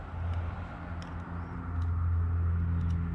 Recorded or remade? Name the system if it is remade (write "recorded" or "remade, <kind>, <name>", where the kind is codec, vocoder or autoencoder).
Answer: recorded